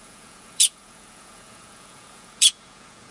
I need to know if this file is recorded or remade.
remade